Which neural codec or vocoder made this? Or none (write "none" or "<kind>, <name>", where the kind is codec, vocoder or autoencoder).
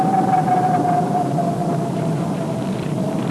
vocoder, BigVGAN v2